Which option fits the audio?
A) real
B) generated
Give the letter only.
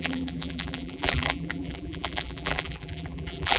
B